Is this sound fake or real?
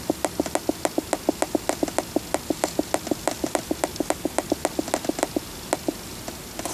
real